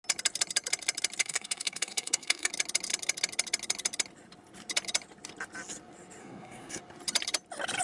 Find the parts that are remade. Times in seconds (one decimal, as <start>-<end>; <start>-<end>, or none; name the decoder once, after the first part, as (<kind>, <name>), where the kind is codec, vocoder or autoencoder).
1.2-2.5 (codec, SNAC); 6.2-6.8